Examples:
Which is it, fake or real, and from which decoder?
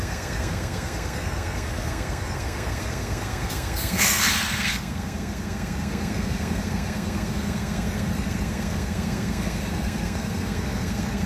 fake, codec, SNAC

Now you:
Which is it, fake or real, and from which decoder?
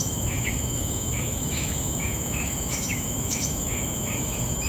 fake, autoencoder, DAC-VAE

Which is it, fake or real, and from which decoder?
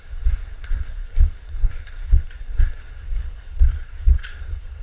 fake, codec, SNAC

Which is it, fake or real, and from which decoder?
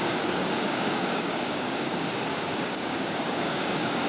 fake, codec, DAC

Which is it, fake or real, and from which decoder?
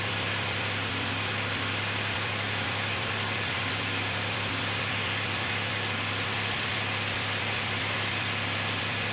fake, vocoder, BigVGAN v2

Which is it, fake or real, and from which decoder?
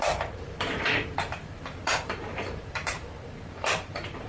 fake, vocoder, BigVGAN v2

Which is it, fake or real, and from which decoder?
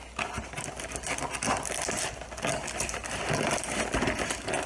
real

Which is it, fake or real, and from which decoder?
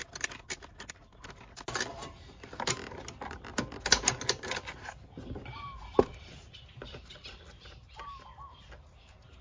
real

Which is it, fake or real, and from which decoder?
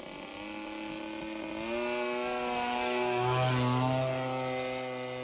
real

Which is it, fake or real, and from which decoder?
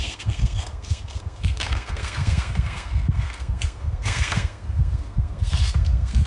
fake, codec, SNAC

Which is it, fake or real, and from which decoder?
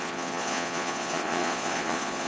fake, vocoder, Vocos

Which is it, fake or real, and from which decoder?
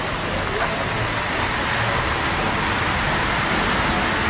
real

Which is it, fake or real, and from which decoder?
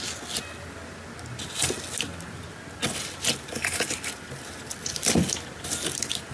real